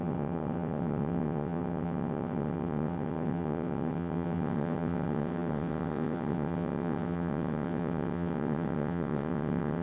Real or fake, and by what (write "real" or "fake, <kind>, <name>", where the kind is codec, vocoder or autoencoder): fake, vocoder, WaveNeXt